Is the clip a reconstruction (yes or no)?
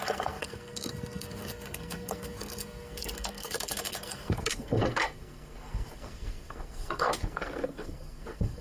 yes